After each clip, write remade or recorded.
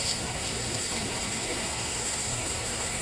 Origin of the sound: remade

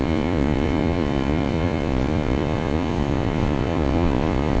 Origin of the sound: remade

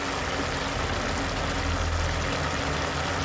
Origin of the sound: recorded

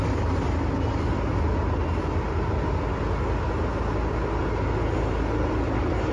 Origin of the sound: recorded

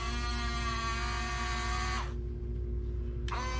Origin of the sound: recorded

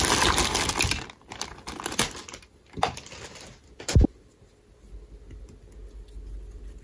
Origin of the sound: recorded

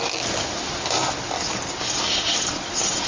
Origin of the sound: recorded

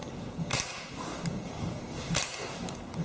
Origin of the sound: recorded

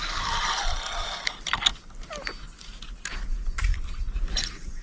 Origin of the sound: recorded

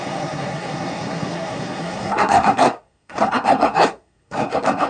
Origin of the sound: remade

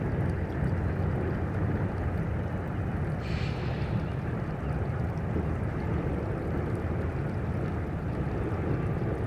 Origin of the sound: recorded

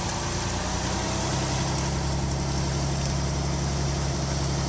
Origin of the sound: recorded